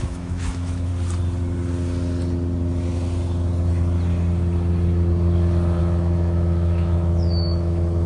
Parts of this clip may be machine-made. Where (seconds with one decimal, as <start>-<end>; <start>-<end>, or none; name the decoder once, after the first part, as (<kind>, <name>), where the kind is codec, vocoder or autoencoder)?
0.0-0.9 (autoencoder, DAC-VAE); 5.8-8.1